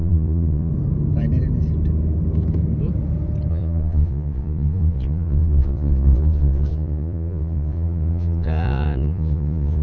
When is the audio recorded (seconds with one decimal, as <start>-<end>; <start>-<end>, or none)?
0.7-3.5